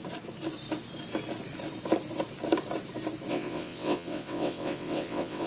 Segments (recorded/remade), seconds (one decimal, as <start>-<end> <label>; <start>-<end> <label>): 0.0-3.3 recorded; 3.3-5.5 remade